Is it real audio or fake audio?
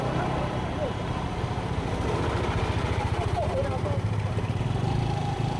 fake